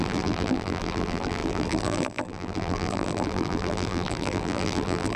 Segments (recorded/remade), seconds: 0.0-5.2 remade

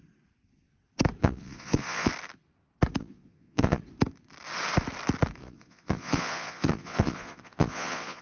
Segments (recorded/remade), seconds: 0.0-1.2 recorded; 1.2-2.1 remade; 2.1-3.0 recorded; 3.0-3.8 remade; 3.8-5.4 recorded; 5.4-8.2 remade

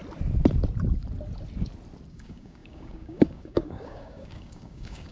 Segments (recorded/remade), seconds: 0.0-2.1 recorded; 2.1-5.1 remade

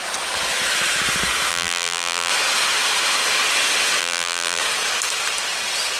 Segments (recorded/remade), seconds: 0.0-1.5 recorded; 1.5-2.3 remade; 2.3-4.0 recorded; 4.0-4.6 remade; 4.6-6.0 recorded

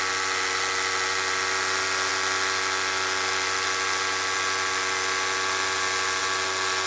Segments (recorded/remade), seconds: 0.0-6.9 recorded